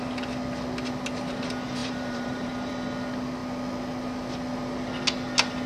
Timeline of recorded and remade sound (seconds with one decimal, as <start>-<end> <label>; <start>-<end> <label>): 0.0-1.8 recorded; 1.8-2.7 remade; 2.7-5.7 recorded